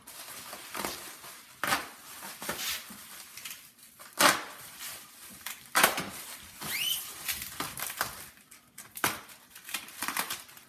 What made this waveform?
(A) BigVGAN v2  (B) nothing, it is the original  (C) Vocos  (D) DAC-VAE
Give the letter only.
A